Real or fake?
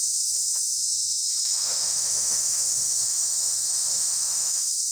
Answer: fake